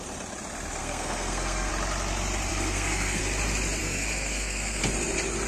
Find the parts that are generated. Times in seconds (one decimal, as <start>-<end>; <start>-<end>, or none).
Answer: 0.8-1.7; 2.5-3.2; 3.8-4.8